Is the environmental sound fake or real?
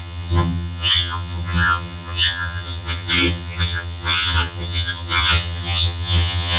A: fake